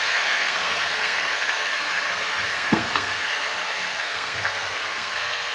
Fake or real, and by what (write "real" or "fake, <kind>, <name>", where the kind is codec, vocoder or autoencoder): fake, codec, SNAC